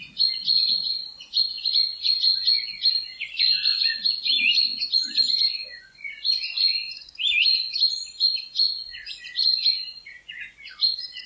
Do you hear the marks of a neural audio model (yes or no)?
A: yes